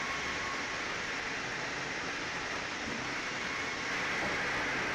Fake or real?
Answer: real